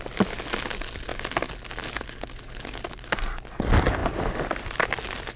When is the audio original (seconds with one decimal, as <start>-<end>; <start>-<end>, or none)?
0.0-5.4